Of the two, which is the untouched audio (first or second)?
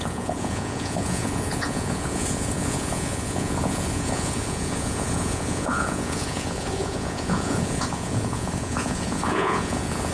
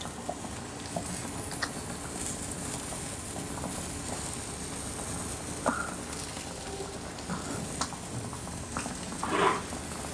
second